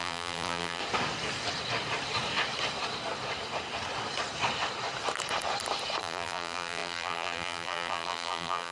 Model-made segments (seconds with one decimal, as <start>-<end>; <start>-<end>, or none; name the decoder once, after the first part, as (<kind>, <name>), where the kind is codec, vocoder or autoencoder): 0.0-0.8 (vocoder, BigVGAN v2); 6.0-8.7

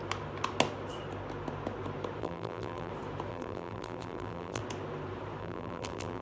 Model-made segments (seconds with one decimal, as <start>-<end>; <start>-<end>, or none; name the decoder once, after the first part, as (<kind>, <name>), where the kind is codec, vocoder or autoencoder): 2.2-2.9 (vocoder, BigVGAN v2); 3.3-4.6; 5.4-6.2